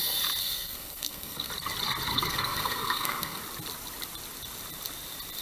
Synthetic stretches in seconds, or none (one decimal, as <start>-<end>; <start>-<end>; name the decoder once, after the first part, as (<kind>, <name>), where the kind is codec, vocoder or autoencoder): 0.4-1.5 (codec, SNAC); 2.1-3.4